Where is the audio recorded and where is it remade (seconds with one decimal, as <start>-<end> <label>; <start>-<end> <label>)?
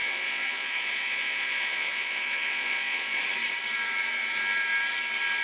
0.0-3.2 remade; 3.2-5.4 recorded